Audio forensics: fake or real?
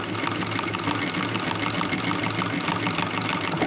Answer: real